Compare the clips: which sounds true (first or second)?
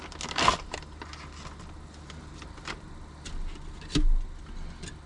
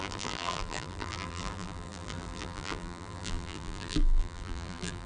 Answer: first